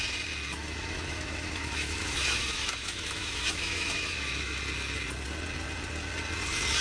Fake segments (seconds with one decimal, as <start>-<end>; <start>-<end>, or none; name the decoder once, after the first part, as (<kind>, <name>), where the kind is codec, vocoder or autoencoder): 0.5-4.6 (autoencoder, DAC-VAE)